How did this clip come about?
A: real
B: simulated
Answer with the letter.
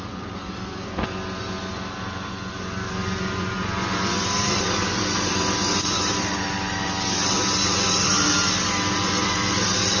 A